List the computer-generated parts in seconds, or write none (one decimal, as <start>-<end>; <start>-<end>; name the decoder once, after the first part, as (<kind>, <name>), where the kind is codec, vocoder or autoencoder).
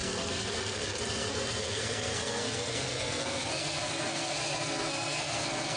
0.0-5.8 (codec, SNAC)